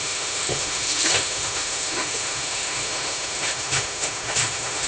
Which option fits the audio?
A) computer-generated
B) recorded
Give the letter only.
A